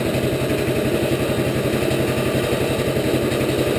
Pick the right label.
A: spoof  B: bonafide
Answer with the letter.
B